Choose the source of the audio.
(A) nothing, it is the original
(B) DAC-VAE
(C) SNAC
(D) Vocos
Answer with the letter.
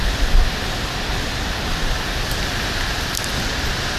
A